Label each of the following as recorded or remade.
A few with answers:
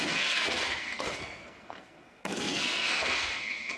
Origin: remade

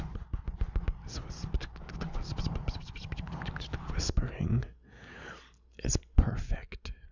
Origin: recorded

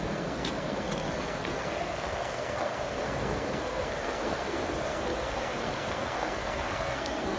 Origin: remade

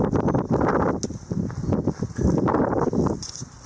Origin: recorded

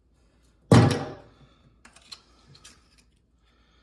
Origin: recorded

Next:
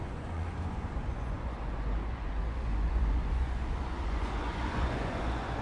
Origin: remade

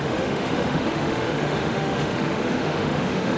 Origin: remade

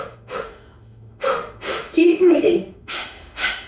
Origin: remade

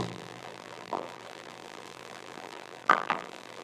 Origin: remade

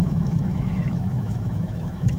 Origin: remade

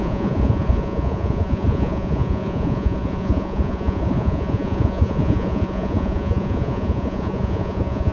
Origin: remade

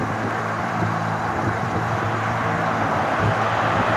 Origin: remade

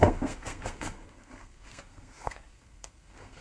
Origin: remade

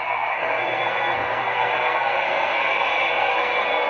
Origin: remade